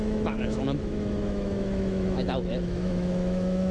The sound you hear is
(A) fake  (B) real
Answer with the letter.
A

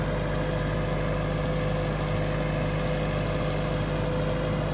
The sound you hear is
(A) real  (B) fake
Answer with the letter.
A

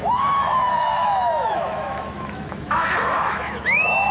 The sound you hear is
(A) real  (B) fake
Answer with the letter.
B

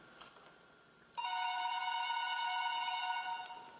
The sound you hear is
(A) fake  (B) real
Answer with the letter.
B